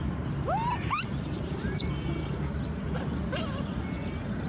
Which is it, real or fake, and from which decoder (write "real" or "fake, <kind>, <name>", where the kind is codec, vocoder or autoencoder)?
real